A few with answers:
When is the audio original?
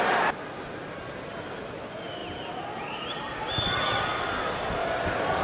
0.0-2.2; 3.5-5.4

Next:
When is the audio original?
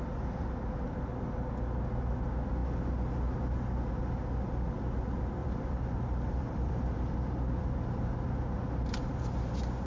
0.0-5.4; 9.5-9.9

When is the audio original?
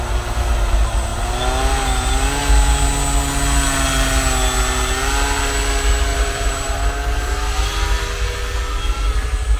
0.0-6.1; 6.7-9.6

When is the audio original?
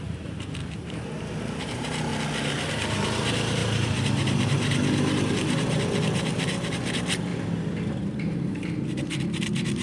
0.6-1.6; 2.1-2.7; 7.3-7.9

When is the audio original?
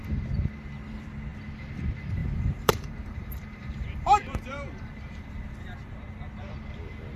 0.0-2.2; 5.3-7.2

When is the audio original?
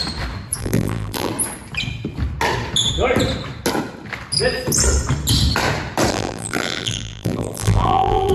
0.0-0.6; 1.3-6.1